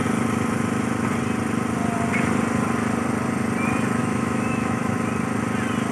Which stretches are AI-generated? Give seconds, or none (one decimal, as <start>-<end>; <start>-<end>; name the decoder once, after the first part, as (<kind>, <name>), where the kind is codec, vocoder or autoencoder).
4.0-4.9 (autoencoder, DAC-VAE)